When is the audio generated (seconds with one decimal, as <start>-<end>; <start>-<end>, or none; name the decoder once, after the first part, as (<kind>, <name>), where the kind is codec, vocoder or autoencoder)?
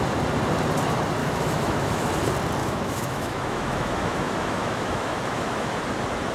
1.2-2.1 (autoencoder, DAC-VAE); 2.6-5.8